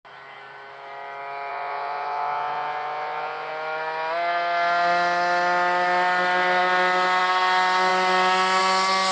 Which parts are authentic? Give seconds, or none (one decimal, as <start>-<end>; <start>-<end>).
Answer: 0.0-1.5; 3.5-9.1